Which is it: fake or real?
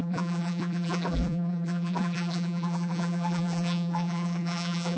fake